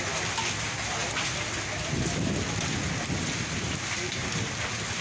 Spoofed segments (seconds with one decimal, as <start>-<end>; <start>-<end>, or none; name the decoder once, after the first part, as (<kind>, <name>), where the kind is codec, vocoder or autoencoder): none